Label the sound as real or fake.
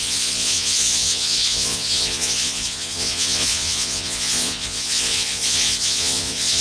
fake